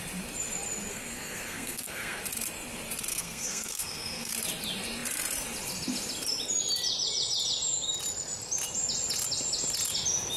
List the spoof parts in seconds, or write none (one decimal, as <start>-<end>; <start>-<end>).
0.9-2.2; 3.1-4.3